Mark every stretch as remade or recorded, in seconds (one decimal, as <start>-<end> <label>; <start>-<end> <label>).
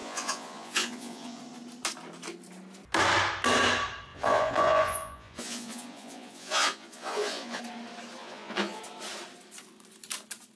0.0-1.4 remade; 1.4-4.1 recorded; 4.1-7.6 remade; 7.6-8.2 recorded; 8.2-8.8 remade; 8.8-10.6 recorded